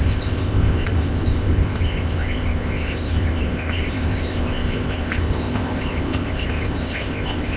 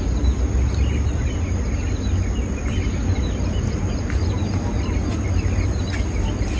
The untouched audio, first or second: second